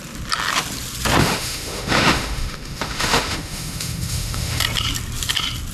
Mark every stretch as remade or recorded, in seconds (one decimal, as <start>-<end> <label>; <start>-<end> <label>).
0.0-1.2 recorded; 1.2-4.6 remade; 4.6-5.7 recorded